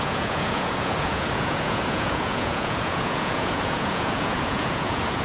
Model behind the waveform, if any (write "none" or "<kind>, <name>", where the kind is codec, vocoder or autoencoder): vocoder, Vocos